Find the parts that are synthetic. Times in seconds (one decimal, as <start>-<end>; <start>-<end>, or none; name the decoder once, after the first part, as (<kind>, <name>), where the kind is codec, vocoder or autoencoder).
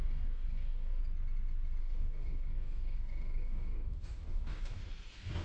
0.0-1.0 (codec, DAC); 1.8-5.4